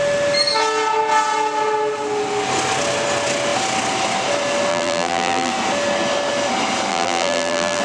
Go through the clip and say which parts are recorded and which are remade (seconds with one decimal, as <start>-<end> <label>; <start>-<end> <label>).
0.0-4.7 recorded; 4.7-5.5 remade; 5.5-6.9 recorded; 6.9-7.8 remade

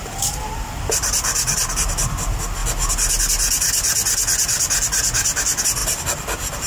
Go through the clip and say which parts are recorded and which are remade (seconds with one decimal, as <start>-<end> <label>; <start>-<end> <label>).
0.0-6.7 recorded

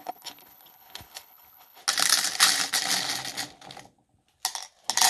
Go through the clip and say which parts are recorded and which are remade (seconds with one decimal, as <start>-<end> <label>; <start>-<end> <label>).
0.0-1.8 remade; 1.8-5.1 recorded